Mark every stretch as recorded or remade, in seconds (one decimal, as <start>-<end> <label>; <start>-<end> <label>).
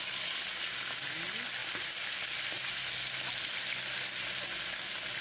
0.0-1.6 recorded; 1.6-2.1 remade; 2.1-5.2 recorded